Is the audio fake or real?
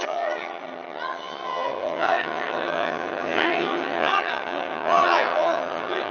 fake